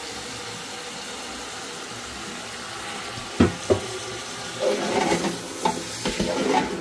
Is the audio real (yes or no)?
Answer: yes